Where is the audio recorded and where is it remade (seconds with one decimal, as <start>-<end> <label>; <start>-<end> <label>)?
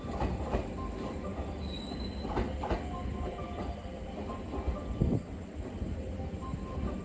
0.0-7.0 recorded